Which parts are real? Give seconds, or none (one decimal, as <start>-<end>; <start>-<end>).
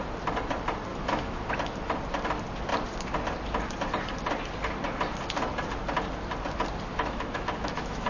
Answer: 0.0-0.9; 1.5-6.9